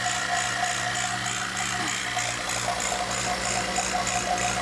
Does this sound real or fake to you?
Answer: real